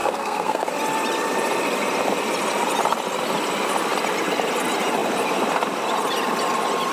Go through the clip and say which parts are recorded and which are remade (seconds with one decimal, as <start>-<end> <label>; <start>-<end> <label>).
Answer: 0.0-0.7 remade; 0.7-6.9 recorded